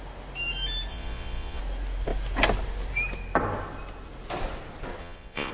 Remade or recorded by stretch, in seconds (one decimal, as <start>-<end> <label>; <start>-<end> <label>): 0.0-0.9 recorded; 0.9-1.6 remade; 1.6-5.0 recorded; 5.0-5.5 remade

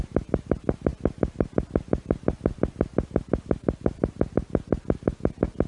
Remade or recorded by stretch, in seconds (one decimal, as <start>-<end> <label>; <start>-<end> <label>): 0.0-5.7 recorded

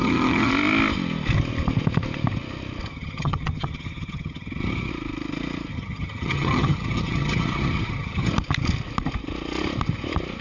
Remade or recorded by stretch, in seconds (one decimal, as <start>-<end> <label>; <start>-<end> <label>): 0.0-0.5 remade; 0.5-2.9 recorded; 2.9-4.9 remade; 4.9-5.7 recorded; 5.7-8.3 remade; 8.3-10.4 recorded

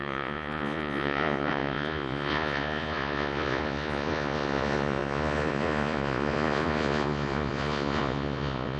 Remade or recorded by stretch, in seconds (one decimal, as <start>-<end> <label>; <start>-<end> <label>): 0.0-8.8 remade

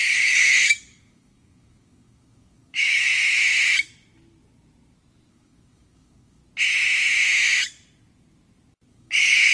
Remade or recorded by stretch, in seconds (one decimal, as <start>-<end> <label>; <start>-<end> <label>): 0.0-3.1 remade; 3.1-5.3 recorded; 5.3-6.4 remade; 6.4-8.9 recorded; 8.9-9.5 remade

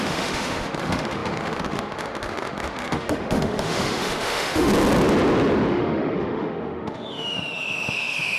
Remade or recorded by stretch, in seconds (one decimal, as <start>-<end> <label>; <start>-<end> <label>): 0.0-4.7 remade; 4.7-5.7 recorded; 5.7-8.4 remade